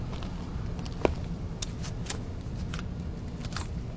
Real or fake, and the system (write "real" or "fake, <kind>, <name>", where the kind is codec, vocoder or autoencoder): real